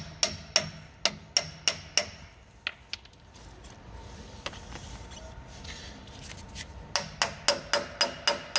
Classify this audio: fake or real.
real